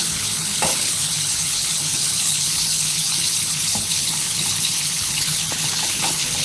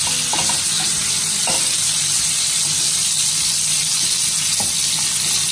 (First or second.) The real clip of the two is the second